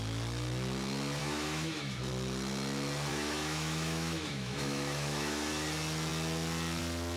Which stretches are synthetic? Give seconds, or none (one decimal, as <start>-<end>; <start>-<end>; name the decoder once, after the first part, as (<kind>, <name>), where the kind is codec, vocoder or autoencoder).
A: 1.2-2.1 (autoencoder, DAC-VAE); 3.1-5.5